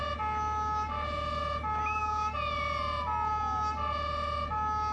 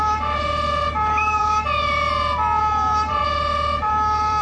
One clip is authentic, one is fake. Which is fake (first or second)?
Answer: second